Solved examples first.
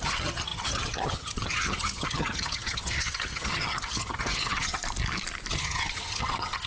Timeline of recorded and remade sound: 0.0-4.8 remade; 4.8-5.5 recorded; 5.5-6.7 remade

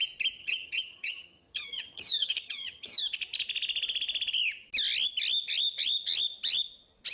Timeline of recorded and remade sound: 0.0-0.4 recorded; 0.4-3.0 remade; 3.0-7.1 recorded